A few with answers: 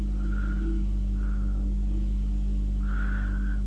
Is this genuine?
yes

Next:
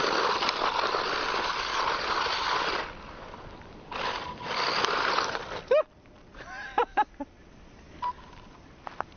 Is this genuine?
yes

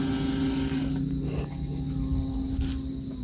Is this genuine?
yes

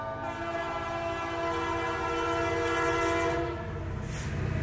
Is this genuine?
yes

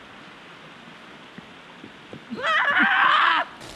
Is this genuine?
yes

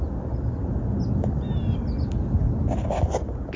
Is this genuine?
yes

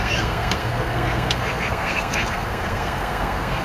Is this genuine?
no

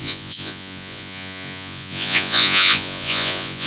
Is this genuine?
no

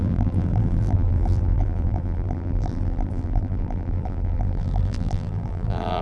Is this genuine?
no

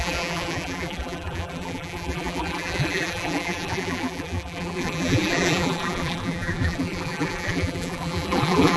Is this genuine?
no